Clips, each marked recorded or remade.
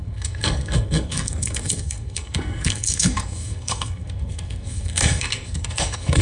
remade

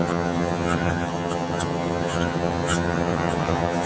remade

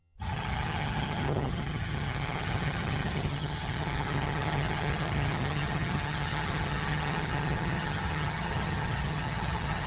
remade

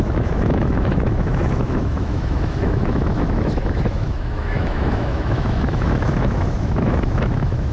remade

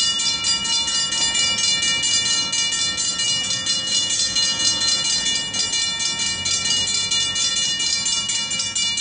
recorded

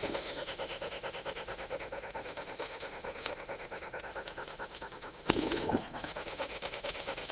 remade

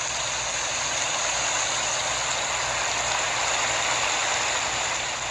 recorded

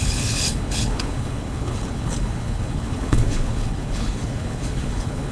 remade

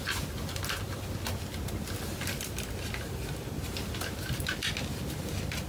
recorded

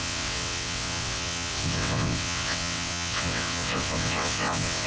remade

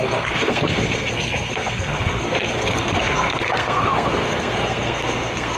remade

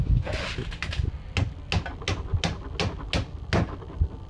recorded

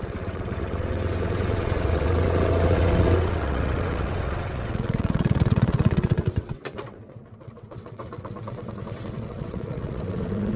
remade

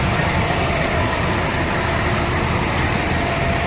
remade